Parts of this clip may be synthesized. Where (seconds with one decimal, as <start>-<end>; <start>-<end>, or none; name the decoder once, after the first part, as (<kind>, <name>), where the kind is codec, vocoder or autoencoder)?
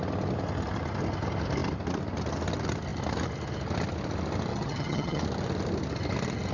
4.5-5.2 (vocoder, HiFi-GAN)